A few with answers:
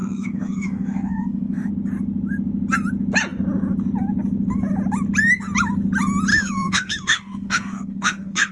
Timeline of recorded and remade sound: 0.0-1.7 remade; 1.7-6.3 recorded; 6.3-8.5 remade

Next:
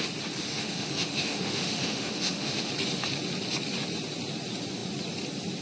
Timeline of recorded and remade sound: 0.0-0.5 recorded; 0.5-2.7 remade; 2.7-5.6 recorded

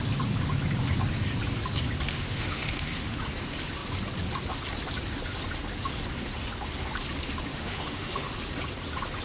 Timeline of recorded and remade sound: 0.0-2.1 recorded; 2.1-3.2 remade; 3.2-7.5 recorded; 7.5-8.3 remade; 8.3-9.2 recorded

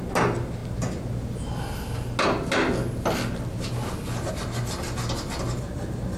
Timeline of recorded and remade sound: 0.0-6.2 recorded

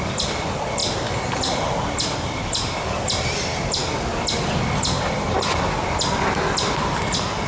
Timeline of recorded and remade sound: 0.0-7.5 recorded